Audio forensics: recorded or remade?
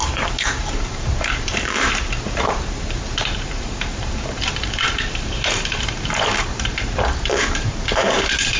remade